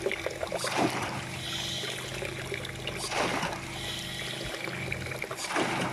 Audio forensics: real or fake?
real